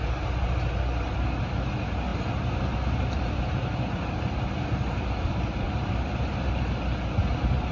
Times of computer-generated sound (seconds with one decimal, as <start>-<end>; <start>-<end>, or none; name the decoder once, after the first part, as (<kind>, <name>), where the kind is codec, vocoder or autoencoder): 0.0-0.7 (vocoder, BigVGAN v2); 2.1-6.7